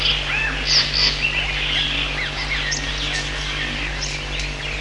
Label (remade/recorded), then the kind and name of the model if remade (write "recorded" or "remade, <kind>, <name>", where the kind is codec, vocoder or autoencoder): recorded